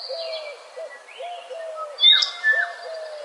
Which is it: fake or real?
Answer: real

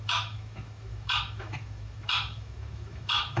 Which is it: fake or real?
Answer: fake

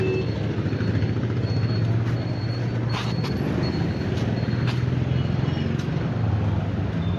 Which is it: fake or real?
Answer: real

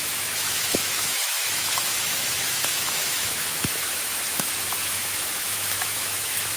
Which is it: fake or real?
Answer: fake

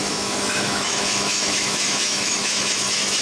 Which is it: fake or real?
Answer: fake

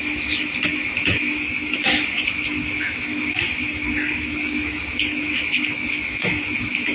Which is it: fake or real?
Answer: fake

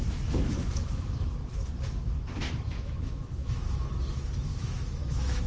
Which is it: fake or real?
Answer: fake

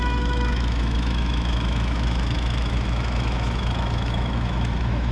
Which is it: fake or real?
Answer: fake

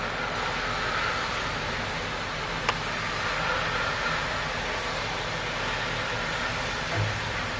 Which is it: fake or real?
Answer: real